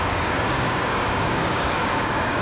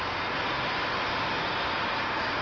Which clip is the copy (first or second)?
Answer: first